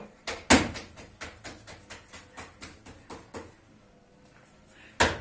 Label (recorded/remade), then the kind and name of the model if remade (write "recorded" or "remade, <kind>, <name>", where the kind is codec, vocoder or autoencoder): recorded